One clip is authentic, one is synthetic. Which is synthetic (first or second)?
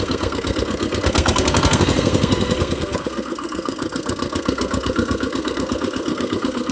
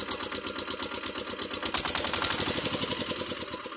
first